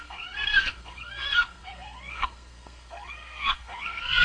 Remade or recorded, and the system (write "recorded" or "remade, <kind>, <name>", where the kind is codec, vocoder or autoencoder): remade, codec, SNAC